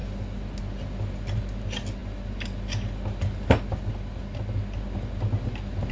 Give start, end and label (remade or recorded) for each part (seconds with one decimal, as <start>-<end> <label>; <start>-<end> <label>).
0.0-5.9 recorded